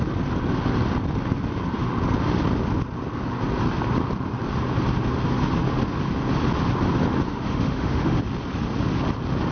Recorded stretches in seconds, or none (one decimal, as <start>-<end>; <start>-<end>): 0.0-7.3; 8.2-9.5